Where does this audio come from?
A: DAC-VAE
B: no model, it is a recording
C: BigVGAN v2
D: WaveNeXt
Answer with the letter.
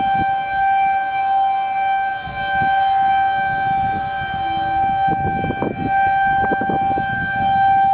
B